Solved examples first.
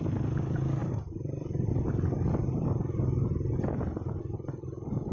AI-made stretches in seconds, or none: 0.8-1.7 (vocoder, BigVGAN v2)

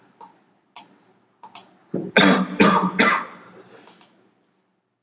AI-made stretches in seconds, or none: none

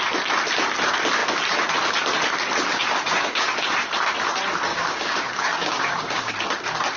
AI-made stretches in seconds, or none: 2.7-3.5 (codec, DAC); 4.7-6.3

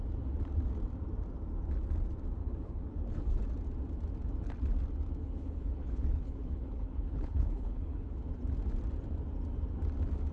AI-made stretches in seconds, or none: 2.4-3.4 (codec, HILCodec); 5.2-8.2

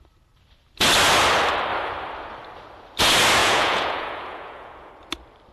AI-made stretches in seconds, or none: 3.4-4.9 (vocoder, Vocos)

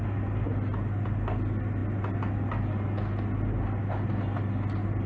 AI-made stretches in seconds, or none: none